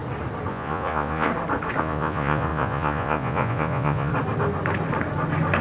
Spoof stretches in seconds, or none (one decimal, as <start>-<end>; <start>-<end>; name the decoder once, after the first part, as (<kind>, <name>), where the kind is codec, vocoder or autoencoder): 0.5-1.3 (vocoder, Vocos); 1.8-4.1